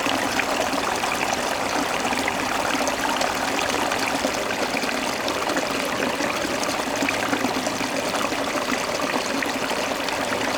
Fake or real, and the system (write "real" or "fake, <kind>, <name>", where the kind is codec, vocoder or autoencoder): real